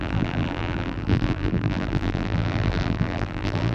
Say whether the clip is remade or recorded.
remade